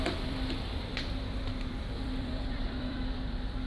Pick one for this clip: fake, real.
fake